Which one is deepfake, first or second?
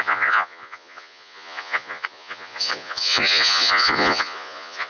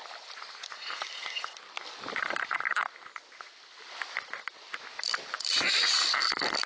first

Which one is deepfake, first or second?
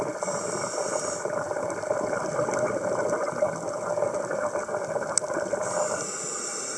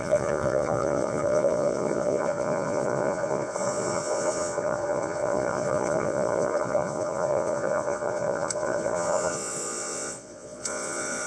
second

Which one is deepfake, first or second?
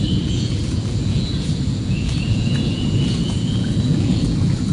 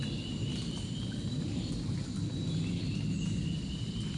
first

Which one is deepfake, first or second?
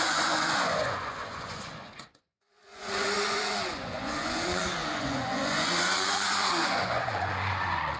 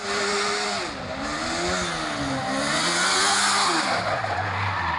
first